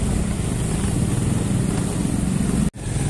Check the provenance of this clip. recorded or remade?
recorded